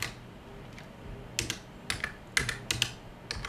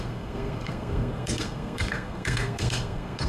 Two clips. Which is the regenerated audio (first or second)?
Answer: second